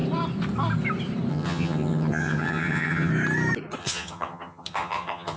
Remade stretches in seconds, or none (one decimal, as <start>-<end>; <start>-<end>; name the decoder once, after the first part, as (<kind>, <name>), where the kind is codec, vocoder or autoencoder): 1.3-3.1 (vocoder, HiFi-GAN); 3.8-5.4